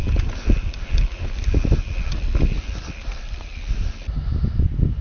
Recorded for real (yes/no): yes